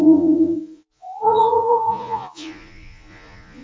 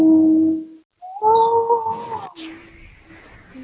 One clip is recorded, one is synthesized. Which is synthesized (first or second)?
first